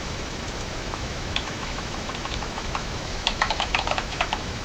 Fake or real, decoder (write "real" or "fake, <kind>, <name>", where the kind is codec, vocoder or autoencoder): fake, autoencoder, DAC-VAE